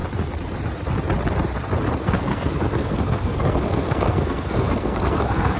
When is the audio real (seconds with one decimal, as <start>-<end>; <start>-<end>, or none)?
0.0-2.0